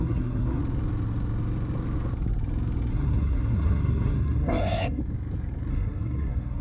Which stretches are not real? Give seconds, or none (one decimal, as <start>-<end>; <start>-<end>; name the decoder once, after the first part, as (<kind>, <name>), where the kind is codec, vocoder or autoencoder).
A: 0.0-0.6 (codec, SNAC); 2.9-5.0; 5.7-6.6